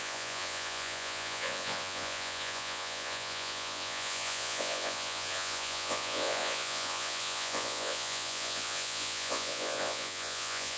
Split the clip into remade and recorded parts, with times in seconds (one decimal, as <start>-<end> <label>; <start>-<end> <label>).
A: 0.0-10.8 remade